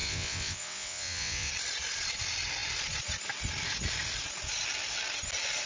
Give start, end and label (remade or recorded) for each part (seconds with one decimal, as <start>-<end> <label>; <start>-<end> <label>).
0.0-1.5 remade; 1.5-5.7 recorded